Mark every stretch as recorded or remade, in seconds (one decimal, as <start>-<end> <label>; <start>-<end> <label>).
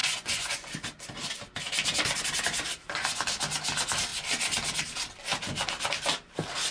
0.0-0.7 remade; 0.7-6.7 recorded